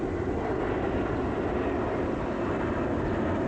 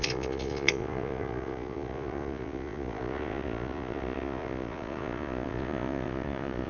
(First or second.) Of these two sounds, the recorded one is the first